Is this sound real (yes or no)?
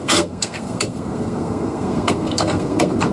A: no